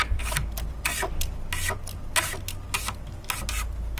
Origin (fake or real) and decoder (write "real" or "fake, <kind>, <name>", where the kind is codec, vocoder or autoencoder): real